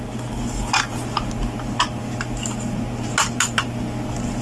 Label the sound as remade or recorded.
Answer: recorded